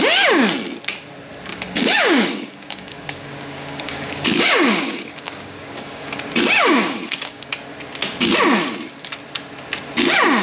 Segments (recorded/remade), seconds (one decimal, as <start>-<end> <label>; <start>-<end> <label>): 0.0-1.5 recorded; 1.5-6.1 remade; 6.1-6.6 recorded; 6.6-7.5 remade; 7.5-10.4 recorded